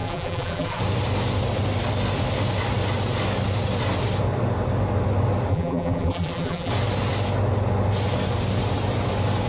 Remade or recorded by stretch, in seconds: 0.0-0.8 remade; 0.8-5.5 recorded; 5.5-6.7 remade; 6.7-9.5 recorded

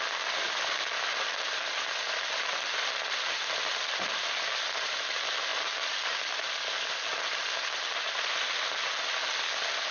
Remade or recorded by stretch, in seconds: 0.0-5.5 remade; 5.5-7.2 recorded; 7.2-9.9 remade

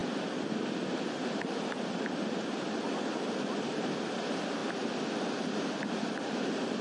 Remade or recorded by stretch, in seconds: 0.0-4.1 remade; 4.1-4.6 recorded; 4.6-5.4 remade; 5.4-6.8 recorded

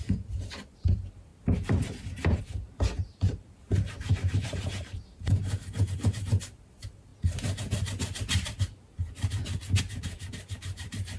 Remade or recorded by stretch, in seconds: 0.0-1.3 remade; 1.3-2.4 recorded; 2.4-7.1 remade; 7.1-9.8 recorded; 9.8-11.2 remade

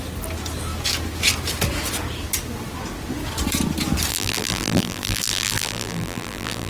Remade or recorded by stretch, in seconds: 0.0-4.1 recorded; 4.1-6.7 remade

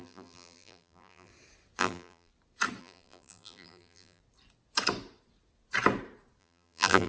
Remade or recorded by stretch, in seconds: 0.0-1.3 remade; 1.3-1.8 recorded; 1.8-2.3 remade; 2.3-2.8 recorded; 2.8-4.2 remade; 4.2-6.4 recorded; 6.4-7.1 remade

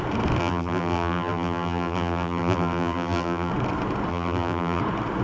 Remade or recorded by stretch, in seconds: 0.0-0.4 recorded; 0.4-3.5 remade; 3.5-4.1 recorded; 4.1-4.8 remade; 4.8-5.2 recorded